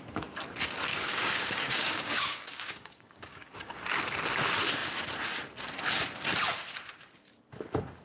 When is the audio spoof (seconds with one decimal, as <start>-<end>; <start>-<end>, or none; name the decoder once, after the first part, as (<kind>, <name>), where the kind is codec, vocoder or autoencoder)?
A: 0.9-3.8 (codec, DAC)